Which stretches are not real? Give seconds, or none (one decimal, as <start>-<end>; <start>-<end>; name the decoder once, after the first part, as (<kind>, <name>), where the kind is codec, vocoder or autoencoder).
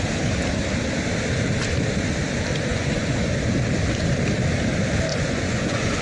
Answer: 2.7-3.4 (vocoder, Vocos); 5.1-6.0